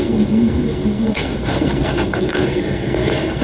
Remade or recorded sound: remade